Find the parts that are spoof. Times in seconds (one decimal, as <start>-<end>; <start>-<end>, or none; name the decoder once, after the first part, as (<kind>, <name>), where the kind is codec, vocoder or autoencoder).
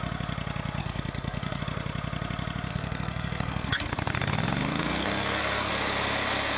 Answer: 0.8-1.6 (codec, SNAC); 2.7-3.9; 4.7-5.7